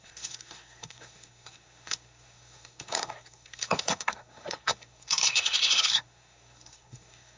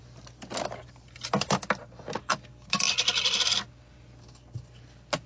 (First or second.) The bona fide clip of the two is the second